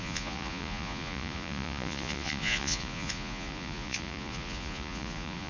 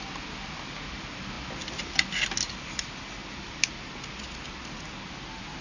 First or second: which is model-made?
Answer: first